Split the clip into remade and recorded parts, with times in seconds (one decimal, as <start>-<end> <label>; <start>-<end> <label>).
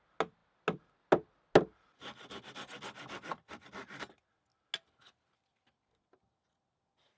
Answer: 0.0-7.2 recorded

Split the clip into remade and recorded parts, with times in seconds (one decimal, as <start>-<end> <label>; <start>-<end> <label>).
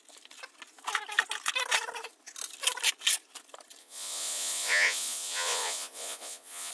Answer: 0.0-3.8 recorded; 3.8-6.7 remade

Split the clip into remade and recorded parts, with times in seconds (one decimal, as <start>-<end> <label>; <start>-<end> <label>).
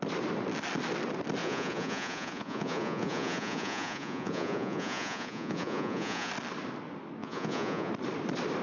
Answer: 0.0-1.4 recorded; 1.4-6.3 remade; 6.3-7.2 recorded; 7.2-7.9 remade; 7.9-8.6 recorded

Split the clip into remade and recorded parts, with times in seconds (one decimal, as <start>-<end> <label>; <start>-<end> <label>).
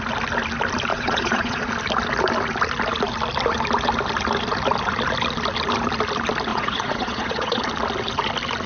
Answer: 0.0-0.9 recorded; 0.9-1.7 remade; 1.7-6.5 recorded; 6.5-7.6 remade; 7.6-8.7 recorded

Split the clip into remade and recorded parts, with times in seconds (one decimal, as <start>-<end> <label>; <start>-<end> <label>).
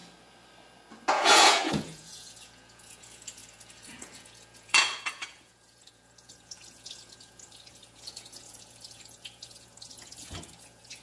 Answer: 0.0-1.1 recorded; 1.1-11.0 remade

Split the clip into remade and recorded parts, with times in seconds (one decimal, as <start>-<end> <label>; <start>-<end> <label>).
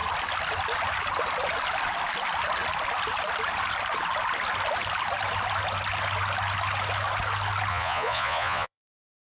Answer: 0.0-7.7 recorded; 7.7-9.0 remade; 9.0-9.4 recorded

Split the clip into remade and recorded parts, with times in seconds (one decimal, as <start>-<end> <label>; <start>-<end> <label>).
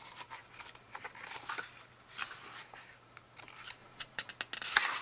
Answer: 0.0-3.8 recorded; 3.8-4.3 remade; 4.3-5.0 recorded